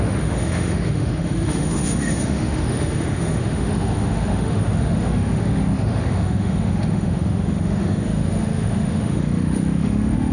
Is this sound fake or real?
fake